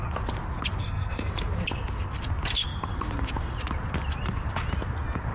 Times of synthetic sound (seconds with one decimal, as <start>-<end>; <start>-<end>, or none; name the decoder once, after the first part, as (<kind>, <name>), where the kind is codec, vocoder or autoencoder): 0.8-1.3 (codec, SNAC)